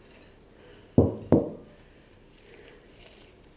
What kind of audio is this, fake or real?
real